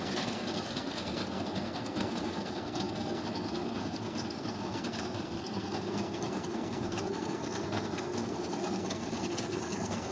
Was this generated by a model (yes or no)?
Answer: yes